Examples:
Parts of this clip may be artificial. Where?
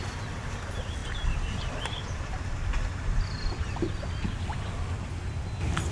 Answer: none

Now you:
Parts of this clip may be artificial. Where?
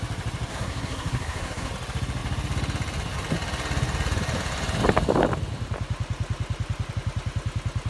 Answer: 0.5-1.7